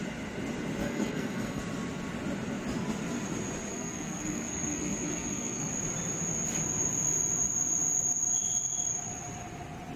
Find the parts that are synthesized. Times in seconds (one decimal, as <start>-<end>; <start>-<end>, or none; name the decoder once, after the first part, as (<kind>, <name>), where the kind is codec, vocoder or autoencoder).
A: 0.8-1.6 (codec, SNAC); 3.7-5.7